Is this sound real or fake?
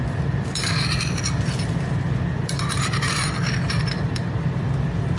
fake